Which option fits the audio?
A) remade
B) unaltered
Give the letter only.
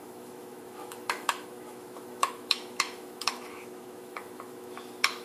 A